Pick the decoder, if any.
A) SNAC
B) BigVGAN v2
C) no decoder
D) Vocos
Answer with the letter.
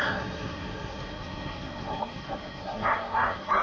A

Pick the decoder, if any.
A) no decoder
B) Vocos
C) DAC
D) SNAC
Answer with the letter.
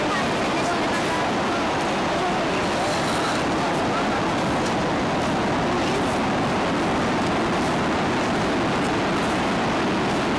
A